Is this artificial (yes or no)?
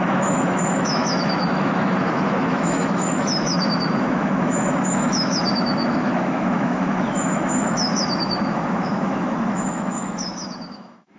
yes